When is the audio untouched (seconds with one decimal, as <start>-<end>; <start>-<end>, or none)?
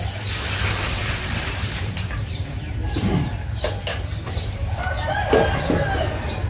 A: 0.0-1.0; 4.6-6.5